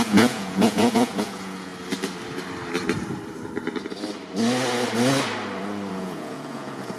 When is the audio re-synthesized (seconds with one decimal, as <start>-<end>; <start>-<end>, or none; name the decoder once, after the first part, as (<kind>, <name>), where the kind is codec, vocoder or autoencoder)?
0.0-1.7 (vocoder, Vocos); 5.9-7.0

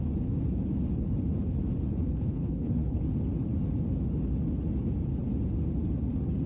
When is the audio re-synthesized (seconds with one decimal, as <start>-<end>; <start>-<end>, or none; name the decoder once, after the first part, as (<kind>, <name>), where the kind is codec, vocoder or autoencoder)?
2.0-3.0 (codec, HILCodec)

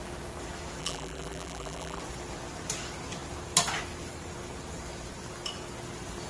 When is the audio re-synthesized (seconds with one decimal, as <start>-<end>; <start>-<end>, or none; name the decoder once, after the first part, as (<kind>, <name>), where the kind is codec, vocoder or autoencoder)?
0.8-2.0 (vocoder, BigVGAN v2)

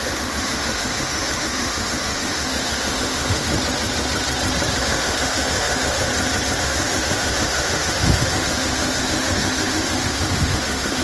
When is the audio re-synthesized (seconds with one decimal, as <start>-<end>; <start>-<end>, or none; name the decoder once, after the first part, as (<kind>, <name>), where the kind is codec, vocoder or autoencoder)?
0.0-3.5 (autoencoder, DAC-VAE); 4.8-6.1; 6.6-11.0